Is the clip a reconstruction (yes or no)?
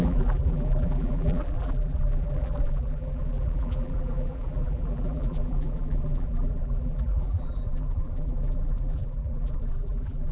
yes